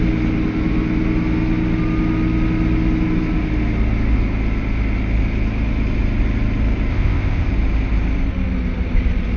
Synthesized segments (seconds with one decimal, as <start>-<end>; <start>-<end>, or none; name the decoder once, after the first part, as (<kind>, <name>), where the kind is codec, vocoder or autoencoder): 6.9-7.5 (codec, ZipCodec)